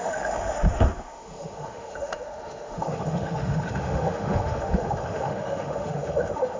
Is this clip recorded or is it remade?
remade